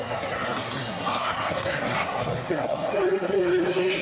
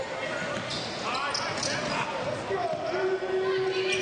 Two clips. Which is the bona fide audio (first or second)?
second